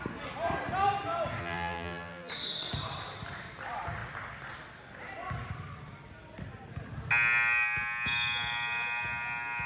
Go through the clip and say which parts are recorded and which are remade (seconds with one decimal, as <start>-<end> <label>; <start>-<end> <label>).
0.0-1.4 recorded; 1.4-2.3 remade; 2.3-9.7 recorded